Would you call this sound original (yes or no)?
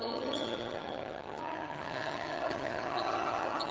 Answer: no